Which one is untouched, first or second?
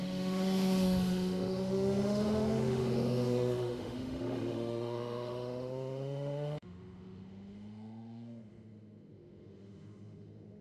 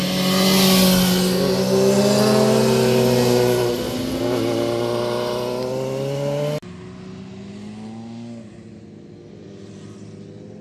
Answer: second